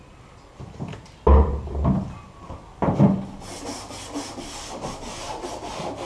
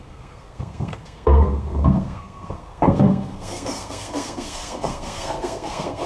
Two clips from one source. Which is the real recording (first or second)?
first